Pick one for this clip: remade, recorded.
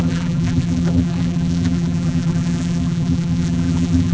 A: remade